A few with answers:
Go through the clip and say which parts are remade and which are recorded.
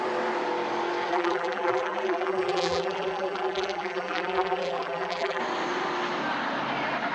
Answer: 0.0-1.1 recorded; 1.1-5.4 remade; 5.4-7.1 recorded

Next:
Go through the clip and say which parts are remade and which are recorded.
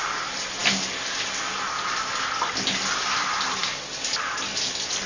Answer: 0.0-5.1 recorded